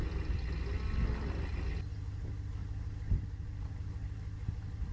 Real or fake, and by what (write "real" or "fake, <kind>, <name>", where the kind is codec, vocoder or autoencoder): real